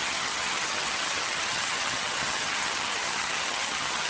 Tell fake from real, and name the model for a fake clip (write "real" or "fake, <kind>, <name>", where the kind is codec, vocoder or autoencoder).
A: fake, vocoder, HiFi-GAN